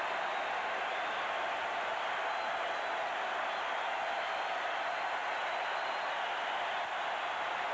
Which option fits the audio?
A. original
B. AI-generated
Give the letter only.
A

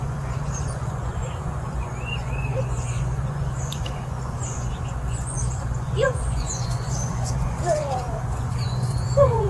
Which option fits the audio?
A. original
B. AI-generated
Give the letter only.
B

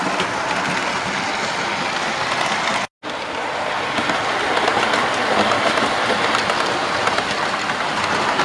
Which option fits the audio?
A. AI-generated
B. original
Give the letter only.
B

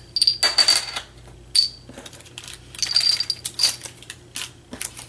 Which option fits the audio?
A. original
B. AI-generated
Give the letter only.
A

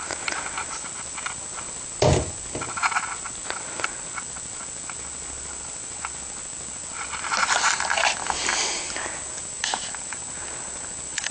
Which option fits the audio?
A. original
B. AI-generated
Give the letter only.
A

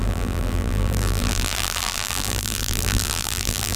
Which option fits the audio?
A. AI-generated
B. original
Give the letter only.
A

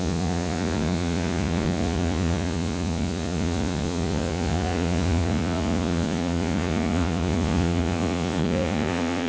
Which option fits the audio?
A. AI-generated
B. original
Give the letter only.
A